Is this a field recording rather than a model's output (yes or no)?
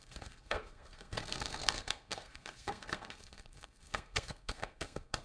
no